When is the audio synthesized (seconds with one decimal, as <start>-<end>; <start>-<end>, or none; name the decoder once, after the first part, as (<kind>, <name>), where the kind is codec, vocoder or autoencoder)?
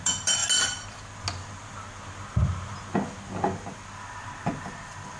none